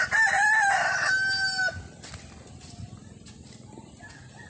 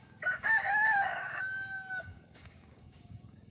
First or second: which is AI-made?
second